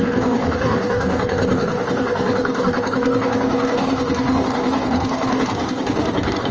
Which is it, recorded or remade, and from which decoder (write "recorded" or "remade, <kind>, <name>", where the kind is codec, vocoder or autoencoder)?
remade, codec, DAC